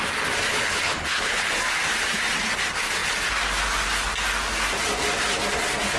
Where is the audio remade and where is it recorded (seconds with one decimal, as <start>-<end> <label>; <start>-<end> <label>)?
0.0-0.5 recorded; 0.5-1.5 remade; 1.5-6.0 recorded